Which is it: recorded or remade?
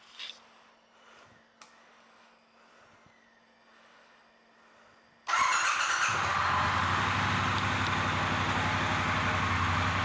recorded